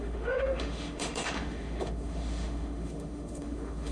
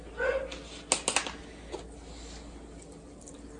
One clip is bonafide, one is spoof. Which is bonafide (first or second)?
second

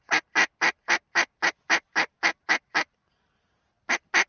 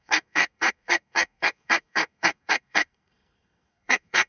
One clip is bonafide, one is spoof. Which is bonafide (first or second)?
first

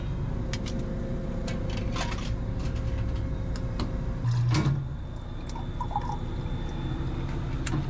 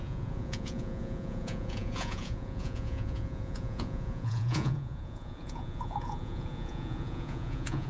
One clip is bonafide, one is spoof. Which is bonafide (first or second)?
first